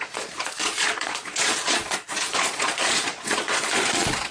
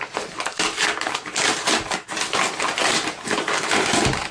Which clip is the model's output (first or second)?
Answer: first